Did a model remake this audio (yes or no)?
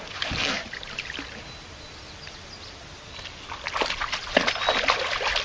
no